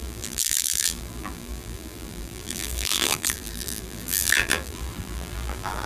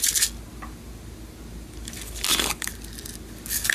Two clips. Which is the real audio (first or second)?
second